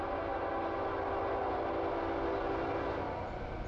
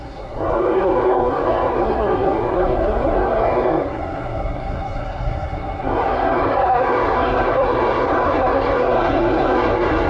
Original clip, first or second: first